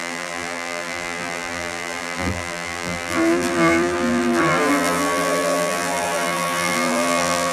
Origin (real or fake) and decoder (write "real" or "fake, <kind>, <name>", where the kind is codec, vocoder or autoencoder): fake, vocoder, BigVGAN v2